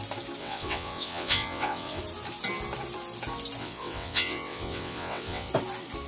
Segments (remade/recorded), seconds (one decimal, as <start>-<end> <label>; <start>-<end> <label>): 0.0-0.4 recorded; 0.4-2.0 remade; 2.0-3.6 recorded; 3.6-5.5 remade; 5.5-6.1 recorded